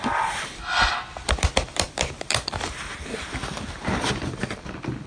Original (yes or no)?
no